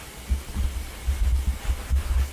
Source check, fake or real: real